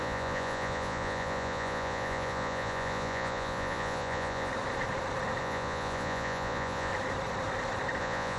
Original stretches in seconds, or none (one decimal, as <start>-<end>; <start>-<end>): 4.5-5.4; 6.9-8.0